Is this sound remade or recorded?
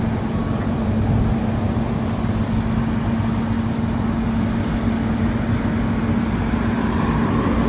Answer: recorded